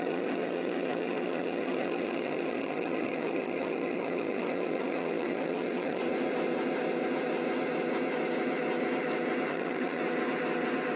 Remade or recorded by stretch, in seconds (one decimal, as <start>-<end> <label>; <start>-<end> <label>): 0.0-6.0 remade; 6.0-9.5 recorded; 9.5-10.0 remade; 10.0-11.0 recorded